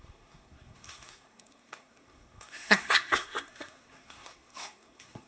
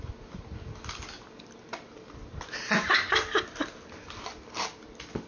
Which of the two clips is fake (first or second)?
first